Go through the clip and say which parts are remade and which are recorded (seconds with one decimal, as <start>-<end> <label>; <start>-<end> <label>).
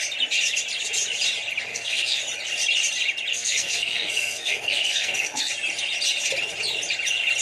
0.0-1.7 recorded; 1.7-2.2 remade; 2.2-3.3 recorded; 3.3-5.5 remade; 5.5-7.4 recorded